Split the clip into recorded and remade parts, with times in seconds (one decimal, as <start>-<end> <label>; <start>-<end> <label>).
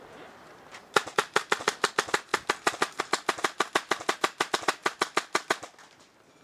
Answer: 0.0-0.7 recorded; 0.7-1.9 remade; 1.9-6.4 recorded